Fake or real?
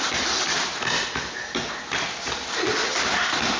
real